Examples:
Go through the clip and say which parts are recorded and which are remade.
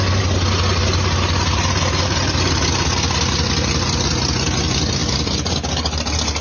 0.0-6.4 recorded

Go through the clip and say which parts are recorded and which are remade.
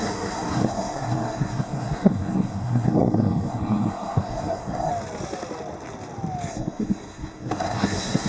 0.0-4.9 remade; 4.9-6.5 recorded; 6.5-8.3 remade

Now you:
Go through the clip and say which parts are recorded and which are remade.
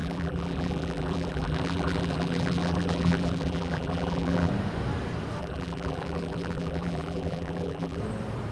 0.0-4.5 remade; 4.5-5.4 recorded; 5.4-8.0 remade; 8.0-8.5 recorded